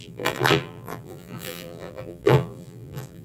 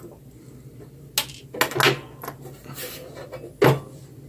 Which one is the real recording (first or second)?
second